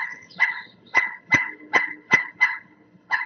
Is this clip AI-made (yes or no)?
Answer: yes